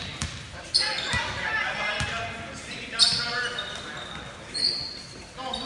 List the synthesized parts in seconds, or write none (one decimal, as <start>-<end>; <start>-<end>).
none